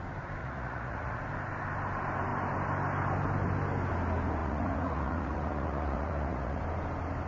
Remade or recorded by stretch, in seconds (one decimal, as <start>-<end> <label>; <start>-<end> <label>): 0.0-0.4 recorded; 0.4-1.2 remade; 1.2-4.4 recorded; 4.4-6.6 remade; 6.6-7.3 recorded